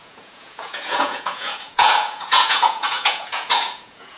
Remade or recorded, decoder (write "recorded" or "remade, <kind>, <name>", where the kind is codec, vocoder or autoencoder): remade, vocoder, Vocos